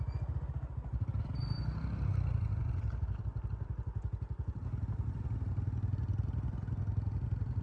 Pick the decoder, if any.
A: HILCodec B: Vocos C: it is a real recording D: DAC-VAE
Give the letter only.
C